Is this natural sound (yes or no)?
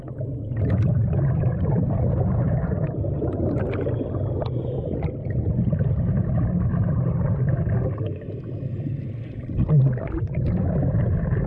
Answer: yes